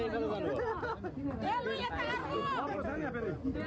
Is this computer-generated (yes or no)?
no